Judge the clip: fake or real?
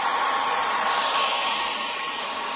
real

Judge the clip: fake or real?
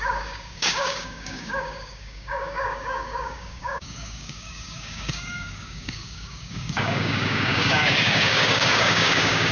fake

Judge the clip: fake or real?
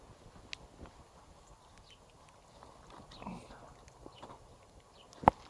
real